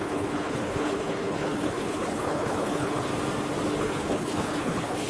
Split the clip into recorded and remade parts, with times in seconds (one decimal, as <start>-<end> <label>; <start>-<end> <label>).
0.0-3.1 remade; 3.1-3.8 recorded; 3.8-5.1 remade